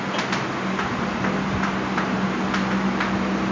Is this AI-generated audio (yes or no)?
no